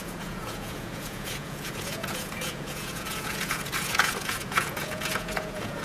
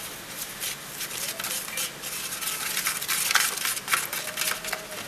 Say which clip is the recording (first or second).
second